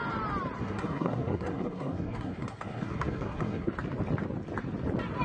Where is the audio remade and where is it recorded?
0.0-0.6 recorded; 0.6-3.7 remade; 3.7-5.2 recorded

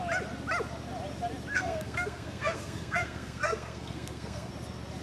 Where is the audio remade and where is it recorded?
0.0-1.5 recorded; 1.5-4.5 remade; 4.5-5.0 recorded

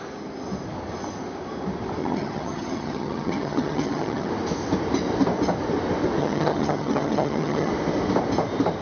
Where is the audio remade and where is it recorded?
0.0-2.0 recorded; 2.0-4.3 remade; 4.3-6.2 recorded; 6.2-7.7 remade; 7.7-8.8 recorded

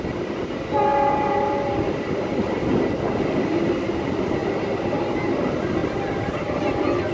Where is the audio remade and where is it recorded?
0.0-5.8 recorded; 5.8-6.5 remade; 6.5-7.1 recorded

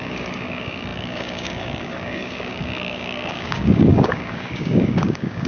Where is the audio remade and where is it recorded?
0.0-5.5 remade